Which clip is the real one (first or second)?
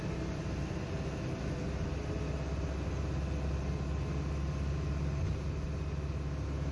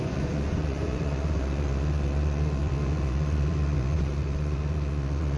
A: first